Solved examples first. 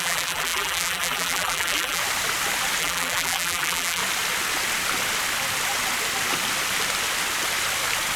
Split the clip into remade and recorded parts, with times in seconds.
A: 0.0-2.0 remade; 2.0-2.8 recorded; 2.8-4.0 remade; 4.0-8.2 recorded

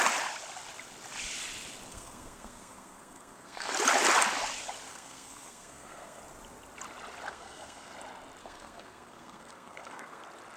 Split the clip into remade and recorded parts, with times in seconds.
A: 0.0-1.9 recorded; 1.9-3.7 remade; 3.7-4.9 recorded; 4.9-6.2 remade; 6.2-7.3 recorded; 7.3-7.9 remade; 7.9-8.4 recorded; 8.4-10.2 remade; 10.2-10.6 recorded

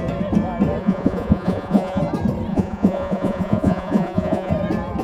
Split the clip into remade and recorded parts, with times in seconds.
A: 0.0-0.8 recorded; 0.8-2.0 remade; 2.0-2.5 recorded; 2.5-4.5 remade; 4.5-5.0 recorded

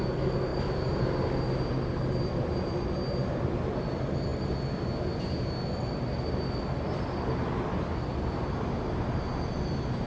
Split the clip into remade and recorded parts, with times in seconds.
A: 0.0-10.1 recorded

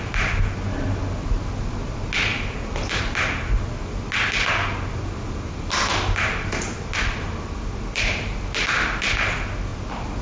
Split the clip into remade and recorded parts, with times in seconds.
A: 0.0-10.2 recorded

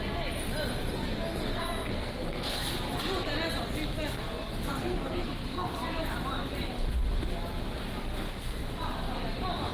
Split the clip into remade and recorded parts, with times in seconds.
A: 0.0-1.4 recorded; 1.4-2.6 remade; 2.6-4.7 recorded; 4.7-5.7 remade; 5.7-8.0 recorded; 8.0-8.7 remade; 8.7-9.7 recorded

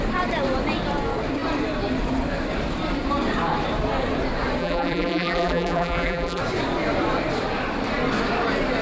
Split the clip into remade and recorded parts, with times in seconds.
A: 0.0-4.6 recorded; 4.6-6.4 remade; 6.4-8.8 recorded

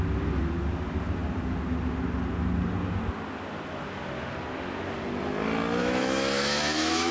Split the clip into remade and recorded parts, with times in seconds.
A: 0.0-5.8 recorded; 5.8-7.1 remade